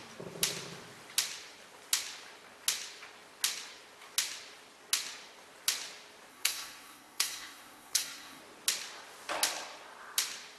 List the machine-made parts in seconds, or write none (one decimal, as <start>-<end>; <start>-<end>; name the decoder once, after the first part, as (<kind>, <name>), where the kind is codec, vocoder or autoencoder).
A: 6.3-8.4 (codec, SNAC)